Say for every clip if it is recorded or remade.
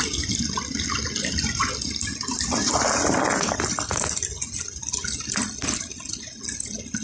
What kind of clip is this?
recorded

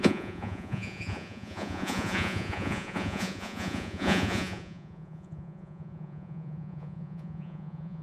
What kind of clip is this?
remade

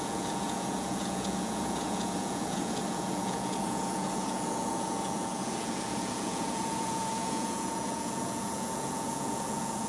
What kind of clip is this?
remade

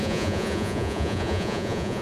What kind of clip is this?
remade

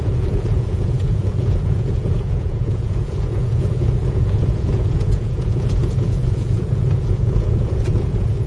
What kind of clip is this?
remade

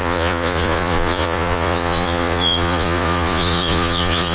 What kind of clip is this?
remade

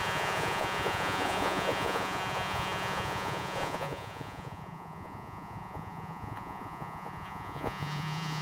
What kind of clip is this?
remade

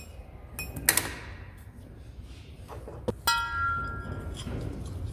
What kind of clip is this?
recorded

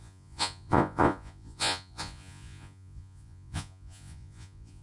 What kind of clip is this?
remade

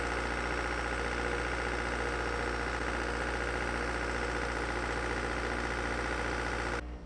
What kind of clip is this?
recorded